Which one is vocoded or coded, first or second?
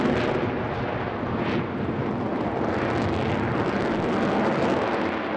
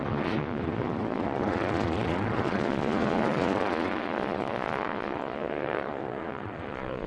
second